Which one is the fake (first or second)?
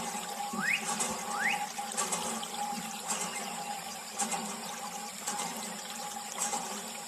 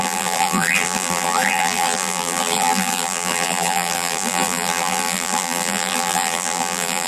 second